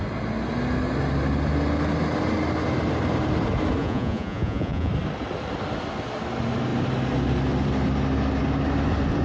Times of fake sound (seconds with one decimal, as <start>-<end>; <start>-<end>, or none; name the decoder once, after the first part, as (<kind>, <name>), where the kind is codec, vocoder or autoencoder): 3.8-4.9 (vocoder, Vocos)